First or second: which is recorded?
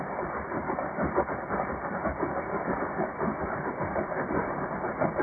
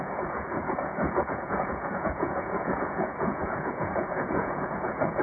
first